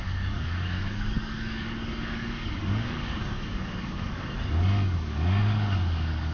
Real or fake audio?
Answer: fake